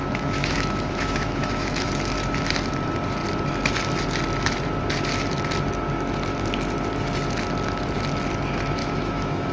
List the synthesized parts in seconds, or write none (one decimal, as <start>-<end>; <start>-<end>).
0.0-1.9; 8.8-9.5